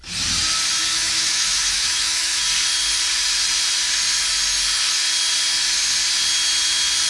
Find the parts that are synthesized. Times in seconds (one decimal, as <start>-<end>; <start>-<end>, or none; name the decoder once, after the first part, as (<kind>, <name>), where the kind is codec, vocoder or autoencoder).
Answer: 0.9-2.4 (autoencoder, DAC-VAE)